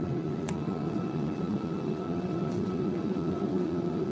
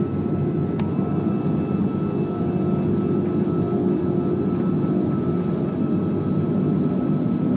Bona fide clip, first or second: second